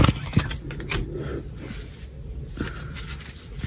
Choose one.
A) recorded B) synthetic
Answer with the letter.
A